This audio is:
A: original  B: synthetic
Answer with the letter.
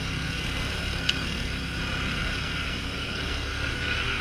B